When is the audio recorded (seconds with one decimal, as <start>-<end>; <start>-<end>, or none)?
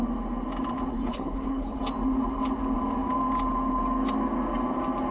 0.0-0.9; 1.8-5.1